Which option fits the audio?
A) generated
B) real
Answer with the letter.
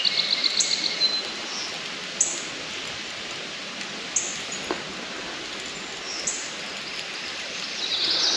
B